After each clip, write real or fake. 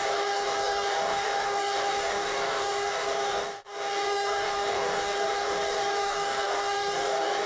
fake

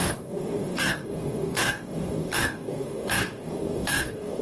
fake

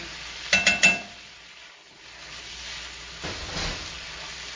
real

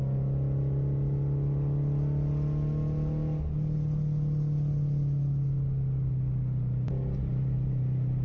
real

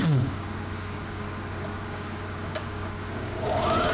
fake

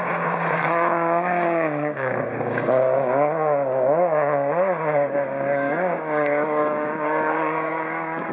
fake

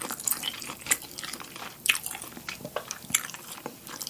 real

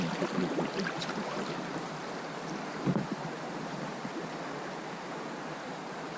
real